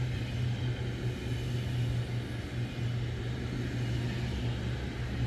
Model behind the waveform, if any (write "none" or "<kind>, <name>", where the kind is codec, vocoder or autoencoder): none